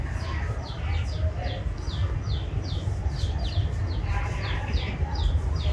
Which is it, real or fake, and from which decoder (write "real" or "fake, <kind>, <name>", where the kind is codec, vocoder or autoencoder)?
real